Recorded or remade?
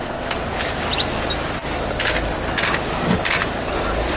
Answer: recorded